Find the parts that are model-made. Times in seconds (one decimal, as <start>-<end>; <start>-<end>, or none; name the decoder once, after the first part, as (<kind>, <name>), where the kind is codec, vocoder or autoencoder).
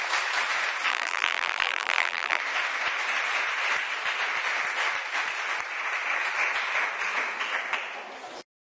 0.9-2.4 (vocoder, BigVGAN v2)